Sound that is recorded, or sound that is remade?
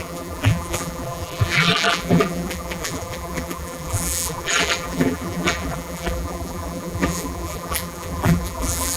remade